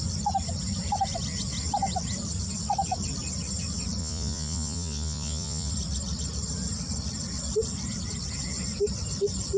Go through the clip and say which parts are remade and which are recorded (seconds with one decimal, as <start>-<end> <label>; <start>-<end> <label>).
0.0-4.0 recorded; 4.0-5.7 remade; 5.7-9.6 recorded